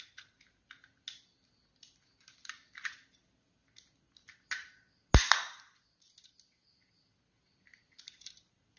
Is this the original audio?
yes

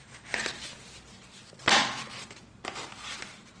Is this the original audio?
yes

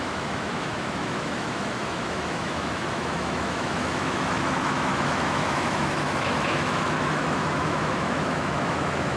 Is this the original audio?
no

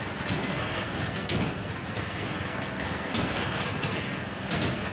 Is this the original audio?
no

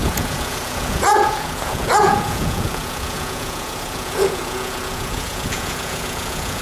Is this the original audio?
no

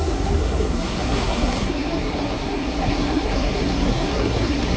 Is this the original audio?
no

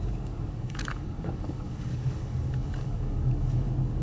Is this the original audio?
no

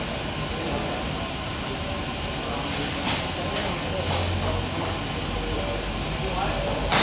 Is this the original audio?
yes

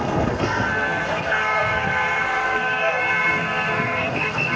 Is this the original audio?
no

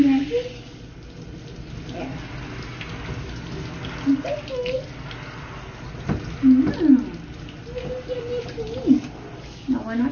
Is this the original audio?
yes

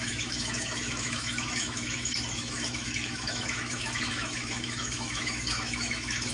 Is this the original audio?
no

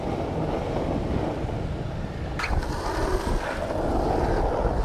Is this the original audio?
yes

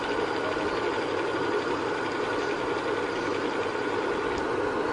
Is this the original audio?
yes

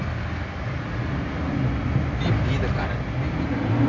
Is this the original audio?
yes